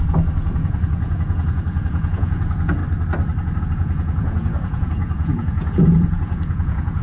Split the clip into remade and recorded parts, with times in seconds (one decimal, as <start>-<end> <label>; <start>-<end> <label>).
0.0-2.8 remade; 2.8-3.6 recorded; 3.6-7.0 remade

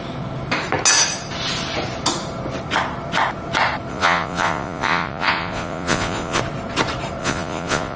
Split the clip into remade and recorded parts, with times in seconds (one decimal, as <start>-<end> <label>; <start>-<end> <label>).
0.0-3.9 recorded; 3.9-6.4 remade; 6.4-7.2 recorded; 7.2-8.0 remade